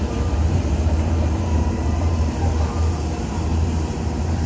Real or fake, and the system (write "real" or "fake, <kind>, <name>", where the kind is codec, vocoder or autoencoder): fake, vocoder, BigVGAN v2